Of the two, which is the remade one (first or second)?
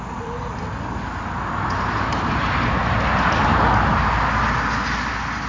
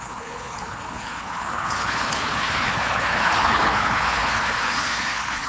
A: second